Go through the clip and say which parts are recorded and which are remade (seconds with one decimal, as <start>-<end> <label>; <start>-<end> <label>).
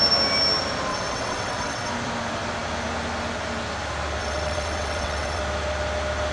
0.0-0.9 recorded; 0.9-1.9 remade; 1.9-4.2 recorded; 4.2-5.4 remade; 5.4-6.3 recorded